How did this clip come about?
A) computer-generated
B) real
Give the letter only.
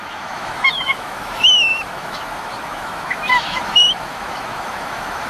A